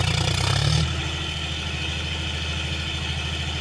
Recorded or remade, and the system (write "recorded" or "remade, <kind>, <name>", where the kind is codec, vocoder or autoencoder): recorded